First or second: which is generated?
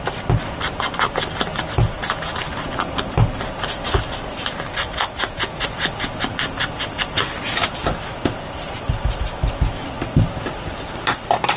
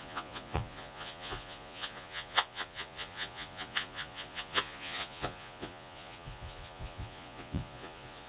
second